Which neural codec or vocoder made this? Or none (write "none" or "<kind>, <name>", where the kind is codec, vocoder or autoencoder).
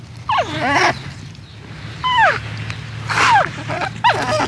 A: none